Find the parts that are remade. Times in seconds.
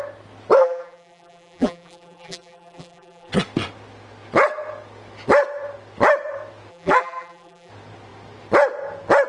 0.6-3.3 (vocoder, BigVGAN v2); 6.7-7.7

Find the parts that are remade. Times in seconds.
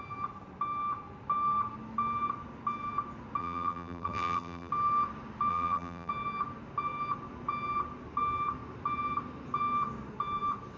3.4-4.7 (vocoder, BigVGAN v2); 5.5-6.1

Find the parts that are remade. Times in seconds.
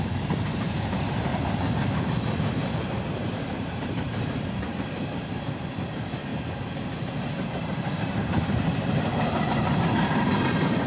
0.0-1.3 (vocoder, BigVGAN v2); 3.3-10.9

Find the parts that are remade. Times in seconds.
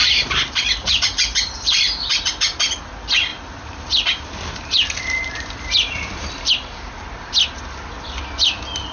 0.0-2.9 (vocoder, BigVGAN v2); 3.3-6.5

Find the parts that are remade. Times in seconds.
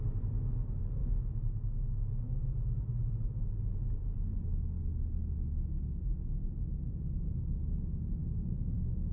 none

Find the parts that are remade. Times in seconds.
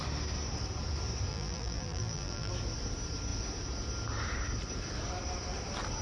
1.3-2.5 (vocoder, BigVGAN v2)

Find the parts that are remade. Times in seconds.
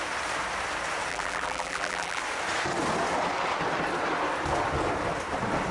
1.1-2.2 (vocoder, BigVGAN v2)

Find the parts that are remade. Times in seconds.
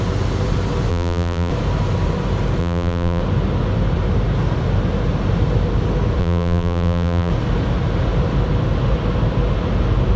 0.9-1.5 (vocoder, BigVGAN v2); 2.6-3.2; 6.2-7.3